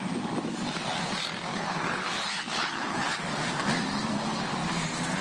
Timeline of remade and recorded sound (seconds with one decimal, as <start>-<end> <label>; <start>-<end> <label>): 0.0-1.5 recorded; 1.5-3.2 remade; 3.2-5.2 recorded